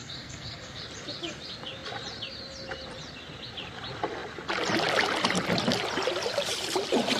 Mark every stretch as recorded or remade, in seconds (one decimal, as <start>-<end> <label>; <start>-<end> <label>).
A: 0.0-0.8 remade; 0.8-7.2 recorded